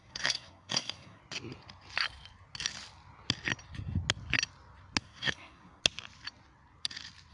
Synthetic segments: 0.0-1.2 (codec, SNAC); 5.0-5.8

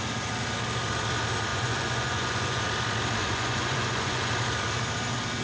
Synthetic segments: 1.5-2.6 (vocoder, Vocos); 3.2-4.3